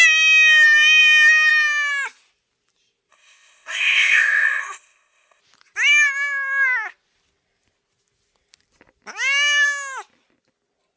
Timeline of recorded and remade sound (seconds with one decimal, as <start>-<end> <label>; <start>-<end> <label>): 0.0-3.1 recorded; 3.1-5.4 remade; 5.4-11.0 recorded